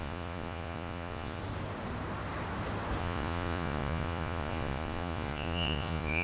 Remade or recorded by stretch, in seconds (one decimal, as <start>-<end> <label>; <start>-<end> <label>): 0.0-1.4 remade; 1.4-3.0 recorded; 3.0-6.2 remade

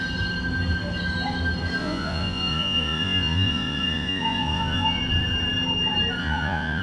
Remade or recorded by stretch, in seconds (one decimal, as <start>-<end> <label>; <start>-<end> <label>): 0.0-1.8 recorded; 1.8-5.0 remade; 5.0-6.2 recorded; 6.2-6.8 remade

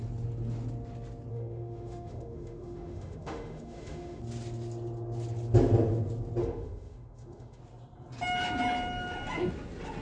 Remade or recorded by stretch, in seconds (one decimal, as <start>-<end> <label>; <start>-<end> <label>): 0.0-1.3 recorded; 1.3-4.2 remade; 4.2-6.4 recorded; 6.4-7.6 remade; 7.6-10.0 recorded

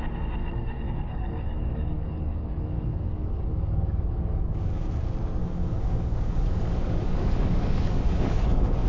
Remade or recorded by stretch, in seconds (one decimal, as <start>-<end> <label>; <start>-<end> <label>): 0.0-0.4 recorded; 0.4-4.9 remade; 4.9-5.4 recorded; 5.4-8.9 remade